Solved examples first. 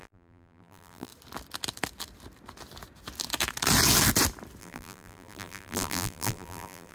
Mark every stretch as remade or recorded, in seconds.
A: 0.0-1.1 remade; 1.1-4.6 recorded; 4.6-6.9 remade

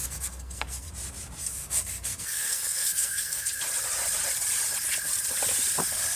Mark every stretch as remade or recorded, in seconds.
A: 0.0-0.9 remade; 0.9-1.4 recorded; 1.4-3.6 remade; 3.6-6.2 recorded

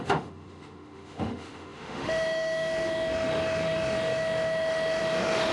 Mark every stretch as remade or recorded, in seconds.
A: 0.0-5.5 remade